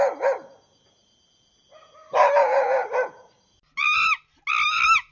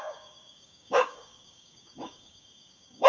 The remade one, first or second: second